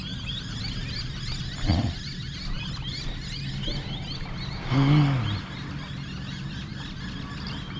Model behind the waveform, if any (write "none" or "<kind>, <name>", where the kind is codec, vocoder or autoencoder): none